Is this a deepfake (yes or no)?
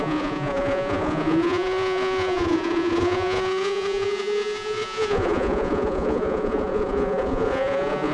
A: yes